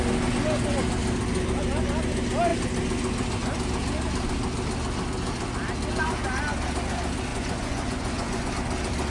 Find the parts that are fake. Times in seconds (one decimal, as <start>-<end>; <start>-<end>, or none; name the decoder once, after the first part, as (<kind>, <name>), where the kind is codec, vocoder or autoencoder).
7.3-8.5 (vocoder, Vocos)